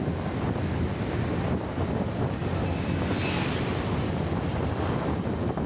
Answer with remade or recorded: recorded